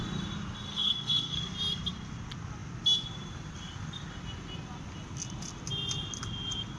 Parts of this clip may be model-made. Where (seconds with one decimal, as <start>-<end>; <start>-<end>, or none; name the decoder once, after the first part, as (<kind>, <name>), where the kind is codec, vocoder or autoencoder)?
0.7-1.4 (codec, SNAC)

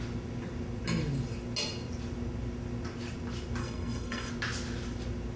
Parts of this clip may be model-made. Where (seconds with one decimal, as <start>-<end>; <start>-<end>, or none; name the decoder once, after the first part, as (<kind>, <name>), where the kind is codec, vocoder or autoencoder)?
3.6-4.3 (codec, SNAC)

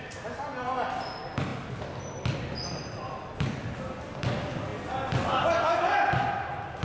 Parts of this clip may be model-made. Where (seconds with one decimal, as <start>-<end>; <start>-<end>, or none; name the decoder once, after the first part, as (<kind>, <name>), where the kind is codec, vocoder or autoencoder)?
none

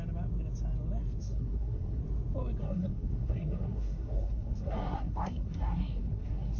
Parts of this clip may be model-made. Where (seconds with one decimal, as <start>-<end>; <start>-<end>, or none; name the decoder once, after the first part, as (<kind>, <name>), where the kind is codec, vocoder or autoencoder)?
1.2-2.0 (codec, SNAC); 2.6-6.6

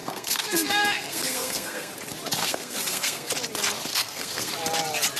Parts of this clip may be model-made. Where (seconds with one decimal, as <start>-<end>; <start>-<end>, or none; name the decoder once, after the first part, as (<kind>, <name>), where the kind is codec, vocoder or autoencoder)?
0.0-1.9 (codec, SNAC); 2.4-3.3; 3.9-4.5

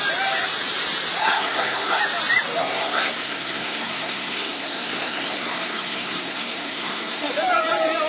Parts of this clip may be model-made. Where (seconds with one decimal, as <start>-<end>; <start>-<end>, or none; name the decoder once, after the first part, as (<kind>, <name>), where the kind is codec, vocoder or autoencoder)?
1.2-2.0 (codec, SNAC); 2.6-7.3